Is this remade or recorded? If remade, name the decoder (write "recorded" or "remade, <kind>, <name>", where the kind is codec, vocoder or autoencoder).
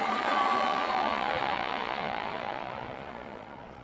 remade, vocoder, Vocos